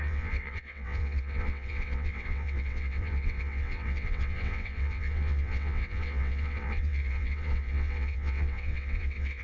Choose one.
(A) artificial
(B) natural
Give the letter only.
A